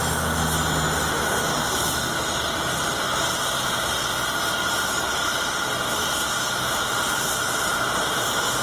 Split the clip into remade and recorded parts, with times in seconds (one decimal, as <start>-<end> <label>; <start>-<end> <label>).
0.0-8.6 recorded